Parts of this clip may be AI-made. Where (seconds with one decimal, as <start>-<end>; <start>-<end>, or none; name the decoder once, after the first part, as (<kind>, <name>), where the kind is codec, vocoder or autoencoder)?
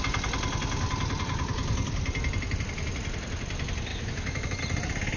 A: 3.9-4.6 (autoencoder, DAC-VAE)